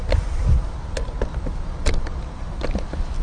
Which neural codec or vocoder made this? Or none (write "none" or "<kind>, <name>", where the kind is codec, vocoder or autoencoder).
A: none